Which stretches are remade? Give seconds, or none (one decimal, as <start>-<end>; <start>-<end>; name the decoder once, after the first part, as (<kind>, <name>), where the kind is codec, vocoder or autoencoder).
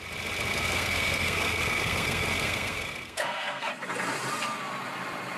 0.5-3.7 (codec, SNAC)